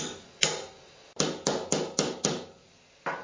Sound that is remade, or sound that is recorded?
recorded